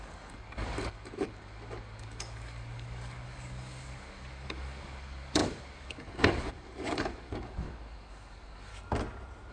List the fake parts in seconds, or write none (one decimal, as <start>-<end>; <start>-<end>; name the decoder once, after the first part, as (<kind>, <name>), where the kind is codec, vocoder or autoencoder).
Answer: 0.0-8.7 (codec, DAC)